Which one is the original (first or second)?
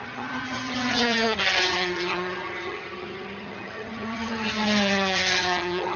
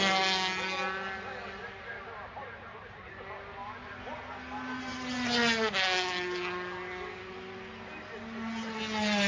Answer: second